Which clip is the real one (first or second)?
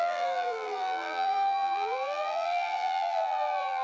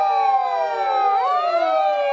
second